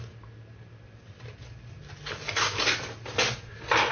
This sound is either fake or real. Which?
real